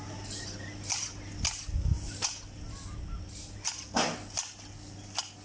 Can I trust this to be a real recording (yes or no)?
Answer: yes